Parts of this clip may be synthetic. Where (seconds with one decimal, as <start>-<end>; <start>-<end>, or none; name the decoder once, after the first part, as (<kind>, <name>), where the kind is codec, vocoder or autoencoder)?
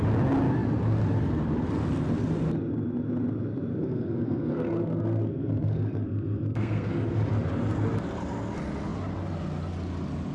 3.7-6.9 (codec, SNAC)